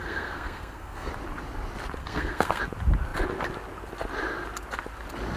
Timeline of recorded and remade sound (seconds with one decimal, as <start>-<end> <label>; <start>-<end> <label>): 0.0-1.1 remade; 1.1-2.0 recorded; 2.0-2.6 remade; 2.6-5.4 recorded